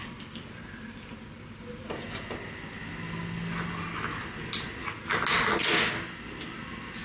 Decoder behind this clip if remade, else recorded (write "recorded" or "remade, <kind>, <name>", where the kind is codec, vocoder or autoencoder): recorded